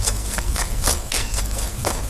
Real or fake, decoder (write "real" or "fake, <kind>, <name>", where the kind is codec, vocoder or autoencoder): fake, codec, SNAC